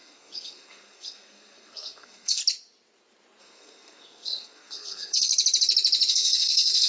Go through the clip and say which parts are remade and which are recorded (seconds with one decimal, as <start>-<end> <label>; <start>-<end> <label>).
0.0-2.4 remade; 2.4-3.4 recorded; 3.4-5.3 remade; 5.3-6.1 recorded; 6.1-6.9 remade